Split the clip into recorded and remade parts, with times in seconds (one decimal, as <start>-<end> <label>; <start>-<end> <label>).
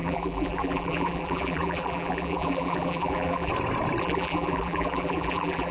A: 0.0-3.5 remade; 3.5-4.0 recorded; 4.0-5.7 remade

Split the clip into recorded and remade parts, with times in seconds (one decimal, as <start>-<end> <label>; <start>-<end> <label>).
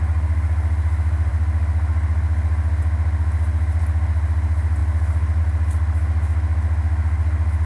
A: 0.0-7.7 recorded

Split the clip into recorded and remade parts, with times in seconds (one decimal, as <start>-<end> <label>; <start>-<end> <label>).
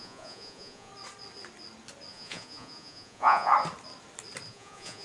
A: 0.0-0.9 remade; 0.9-2.1 recorded; 2.1-3.5 remade; 3.5-4.5 recorded; 4.5-5.0 remade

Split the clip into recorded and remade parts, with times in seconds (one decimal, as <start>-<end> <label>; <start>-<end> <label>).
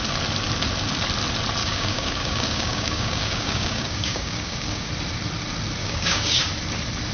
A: 0.0-1.6 recorded; 1.6-4.9 remade; 4.9-5.8 recorded; 5.8-6.4 remade; 6.4-7.1 recorded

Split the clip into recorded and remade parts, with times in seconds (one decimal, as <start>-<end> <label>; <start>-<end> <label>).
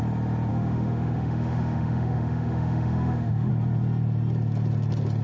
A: 0.0-0.5 recorded; 0.5-3.5 remade; 3.5-5.2 recorded